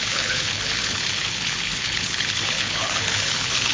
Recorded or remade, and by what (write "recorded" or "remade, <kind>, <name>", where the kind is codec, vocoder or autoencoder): remade, codec, HILCodec